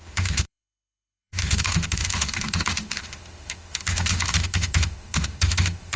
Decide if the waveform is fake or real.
fake